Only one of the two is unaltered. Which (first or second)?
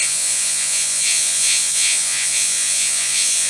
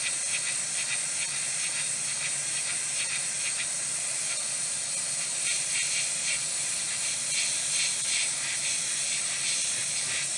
second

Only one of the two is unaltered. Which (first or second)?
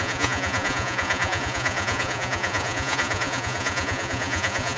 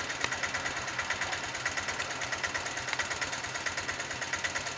second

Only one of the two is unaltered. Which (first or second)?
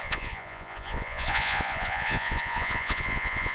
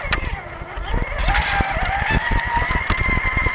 second